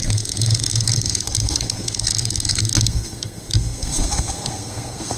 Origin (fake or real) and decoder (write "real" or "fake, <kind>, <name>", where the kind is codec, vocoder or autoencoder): fake, codec, SNAC